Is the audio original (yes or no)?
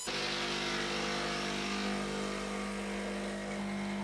yes